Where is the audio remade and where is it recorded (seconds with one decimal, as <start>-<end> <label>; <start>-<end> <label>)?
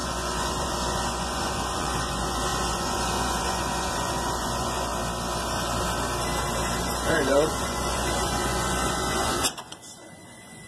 0.0-4.9 remade; 4.9-6.8 recorded; 6.8-10.7 remade